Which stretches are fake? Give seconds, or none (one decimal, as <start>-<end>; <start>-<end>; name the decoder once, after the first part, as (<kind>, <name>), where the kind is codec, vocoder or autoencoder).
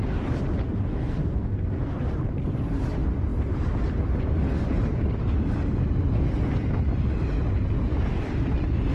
0.9-1.9 (codec, SNAC)